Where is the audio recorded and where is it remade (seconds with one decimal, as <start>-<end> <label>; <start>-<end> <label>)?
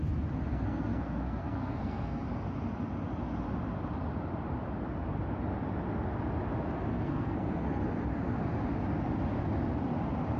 0.0-0.5 recorded; 0.5-2.2 remade; 2.2-6.9 recorded; 6.9-7.8 remade; 7.8-10.4 recorded